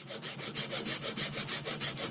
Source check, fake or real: real